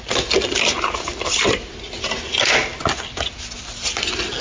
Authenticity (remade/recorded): recorded